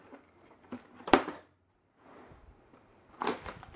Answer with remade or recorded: remade